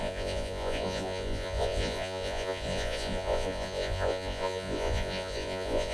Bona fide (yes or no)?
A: no